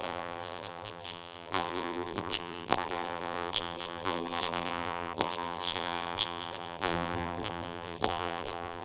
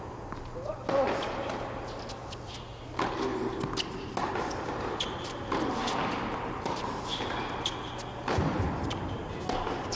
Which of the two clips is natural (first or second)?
second